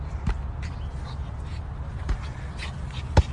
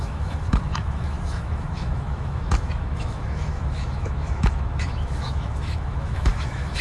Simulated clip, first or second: second